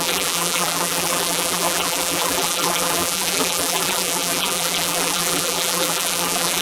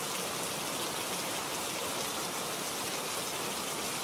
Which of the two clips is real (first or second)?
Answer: second